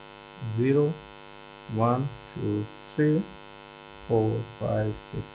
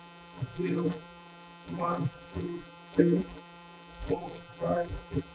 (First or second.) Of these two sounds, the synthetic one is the second